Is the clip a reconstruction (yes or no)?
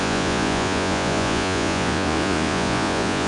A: yes